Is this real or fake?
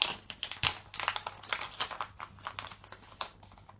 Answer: real